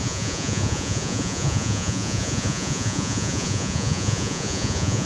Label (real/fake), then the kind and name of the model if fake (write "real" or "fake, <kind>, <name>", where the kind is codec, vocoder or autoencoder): fake, vocoder, Vocos